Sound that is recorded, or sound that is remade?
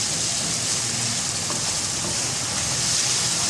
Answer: recorded